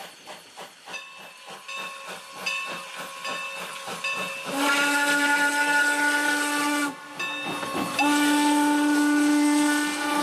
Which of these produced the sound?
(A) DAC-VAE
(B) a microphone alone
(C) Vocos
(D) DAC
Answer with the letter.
B